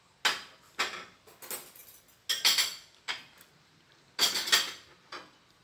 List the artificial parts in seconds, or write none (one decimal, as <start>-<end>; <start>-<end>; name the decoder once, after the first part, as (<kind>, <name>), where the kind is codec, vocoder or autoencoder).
none

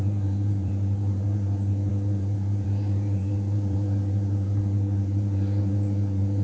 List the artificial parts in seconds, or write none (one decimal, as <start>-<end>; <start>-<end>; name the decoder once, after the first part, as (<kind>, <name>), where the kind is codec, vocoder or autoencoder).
0.0-6.4 (vocoder, BigVGAN v2)